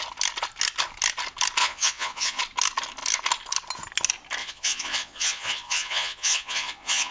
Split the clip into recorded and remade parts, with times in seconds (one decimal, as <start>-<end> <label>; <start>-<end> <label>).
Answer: 0.0-1.6 recorded; 1.6-2.4 remade; 2.4-4.4 recorded; 4.4-7.1 remade